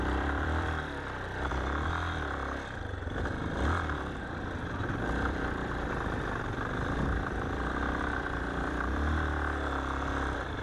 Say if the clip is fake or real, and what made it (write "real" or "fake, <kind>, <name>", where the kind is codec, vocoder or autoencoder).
fake, vocoder, BigVGAN v2